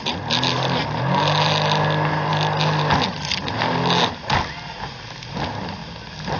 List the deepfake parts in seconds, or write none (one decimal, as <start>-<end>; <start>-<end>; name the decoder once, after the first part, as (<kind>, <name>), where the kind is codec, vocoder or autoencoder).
none